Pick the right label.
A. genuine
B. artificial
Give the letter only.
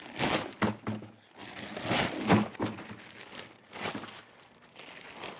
A